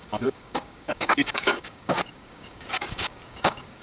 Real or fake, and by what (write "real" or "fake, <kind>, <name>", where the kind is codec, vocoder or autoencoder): fake, codec, DAC